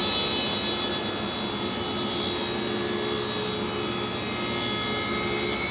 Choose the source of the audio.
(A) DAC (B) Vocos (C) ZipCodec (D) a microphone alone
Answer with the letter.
D